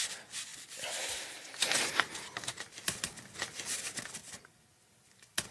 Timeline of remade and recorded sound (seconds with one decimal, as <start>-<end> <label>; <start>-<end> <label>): 0.0-5.5 recorded